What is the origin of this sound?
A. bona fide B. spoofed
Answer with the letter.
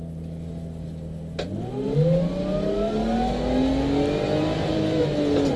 A